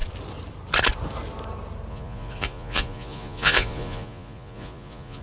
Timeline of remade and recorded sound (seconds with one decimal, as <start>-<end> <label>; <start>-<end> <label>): 0.0-1.9 recorded; 1.9-5.2 remade